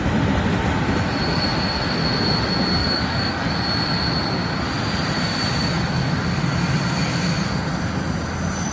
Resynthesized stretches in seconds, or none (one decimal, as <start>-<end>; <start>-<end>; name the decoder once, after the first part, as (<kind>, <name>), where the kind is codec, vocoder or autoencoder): 2.8-3.5 (codec, DAC)